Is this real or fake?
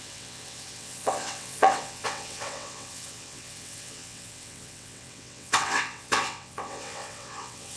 fake